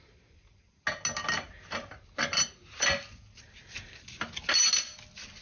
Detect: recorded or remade recorded